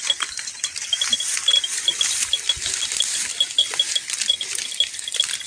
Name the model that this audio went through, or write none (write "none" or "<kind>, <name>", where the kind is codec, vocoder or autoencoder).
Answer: none